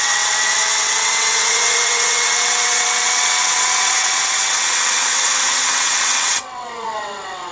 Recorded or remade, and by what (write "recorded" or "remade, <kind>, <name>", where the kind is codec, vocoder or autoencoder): remade, vocoder, WaveNeXt